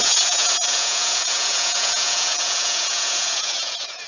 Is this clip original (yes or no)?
no